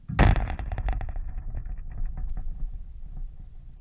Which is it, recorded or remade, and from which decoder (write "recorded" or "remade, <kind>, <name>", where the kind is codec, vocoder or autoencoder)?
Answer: recorded